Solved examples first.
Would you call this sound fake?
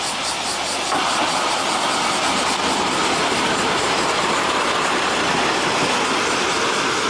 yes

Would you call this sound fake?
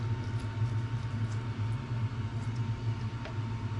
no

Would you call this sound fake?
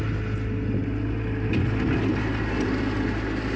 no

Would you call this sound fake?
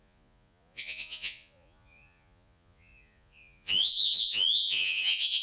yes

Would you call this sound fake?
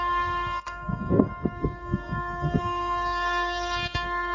yes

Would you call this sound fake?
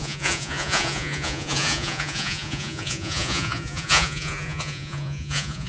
yes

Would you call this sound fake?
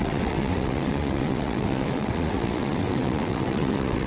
yes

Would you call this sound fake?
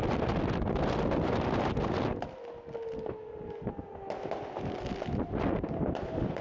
no